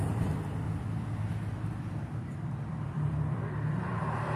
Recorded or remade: remade